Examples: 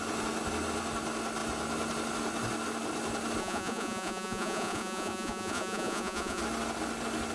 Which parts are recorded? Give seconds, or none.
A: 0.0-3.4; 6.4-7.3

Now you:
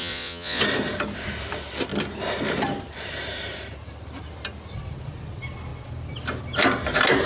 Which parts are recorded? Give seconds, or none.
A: 0.6-7.3

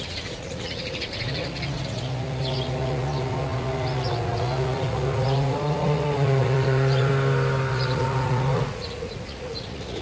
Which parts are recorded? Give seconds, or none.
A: 7.1-7.7

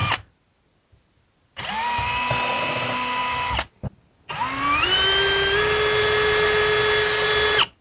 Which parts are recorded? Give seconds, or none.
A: 0.0-7.8

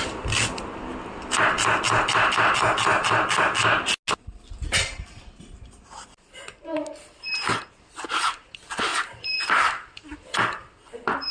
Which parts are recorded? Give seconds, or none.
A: 0.0-11.3

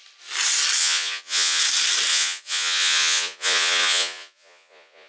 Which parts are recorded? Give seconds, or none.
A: 0.0-0.8; 1.6-2.1